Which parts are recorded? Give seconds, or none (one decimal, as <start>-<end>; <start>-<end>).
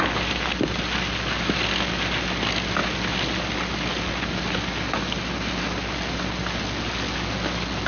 0.0-7.9